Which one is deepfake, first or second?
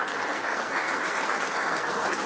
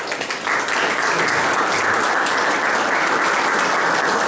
first